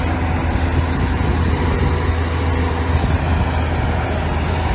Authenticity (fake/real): real